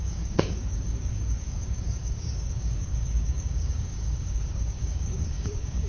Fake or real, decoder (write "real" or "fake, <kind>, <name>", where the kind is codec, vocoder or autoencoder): fake, codec, DAC